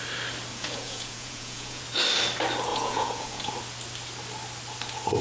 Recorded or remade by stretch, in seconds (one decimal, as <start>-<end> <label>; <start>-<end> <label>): 0.0-0.5 recorded; 0.5-1.8 remade; 1.8-2.7 recorded; 2.7-3.5 remade; 3.5-5.2 recorded